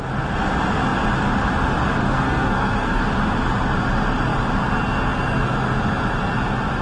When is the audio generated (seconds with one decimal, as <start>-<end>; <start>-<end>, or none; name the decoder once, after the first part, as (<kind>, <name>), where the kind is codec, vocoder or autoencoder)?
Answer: 2.0-3.0 (codec, SNAC)